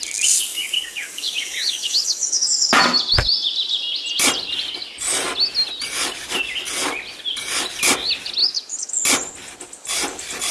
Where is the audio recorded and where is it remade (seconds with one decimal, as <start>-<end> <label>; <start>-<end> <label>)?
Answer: 0.0-0.5 recorded; 0.5-2.7 remade; 2.7-8.4 recorded; 8.4-9.0 remade; 9.0-10.5 recorded